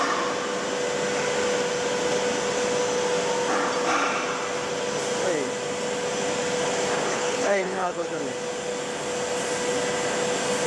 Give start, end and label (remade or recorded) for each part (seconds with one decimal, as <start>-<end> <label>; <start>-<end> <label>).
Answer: 0.0-7.1 recorded; 7.1-8.2 remade; 8.2-10.7 recorded